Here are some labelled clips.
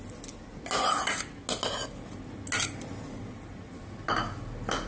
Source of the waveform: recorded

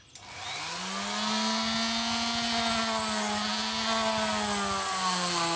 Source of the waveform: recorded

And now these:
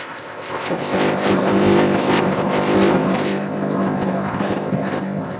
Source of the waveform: remade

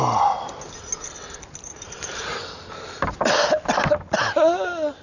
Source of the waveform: recorded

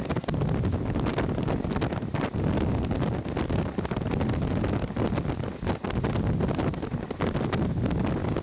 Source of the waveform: recorded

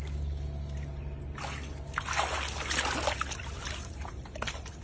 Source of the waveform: recorded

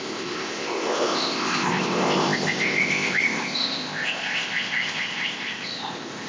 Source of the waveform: remade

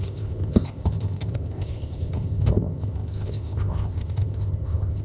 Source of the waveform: remade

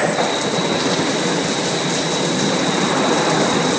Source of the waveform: recorded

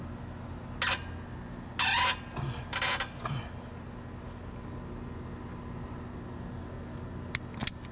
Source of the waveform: recorded